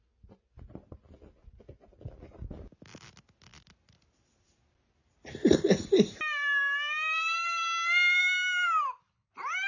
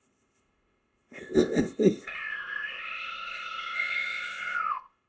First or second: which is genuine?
first